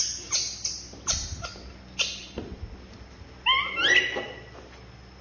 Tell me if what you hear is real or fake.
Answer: real